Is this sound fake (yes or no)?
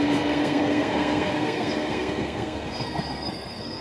yes